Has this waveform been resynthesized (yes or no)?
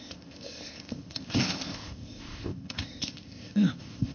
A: yes